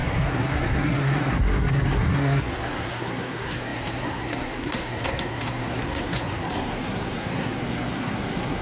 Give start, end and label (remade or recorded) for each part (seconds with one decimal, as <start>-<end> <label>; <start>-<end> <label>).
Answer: 0.0-8.6 remade